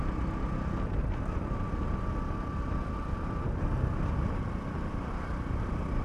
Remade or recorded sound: recorded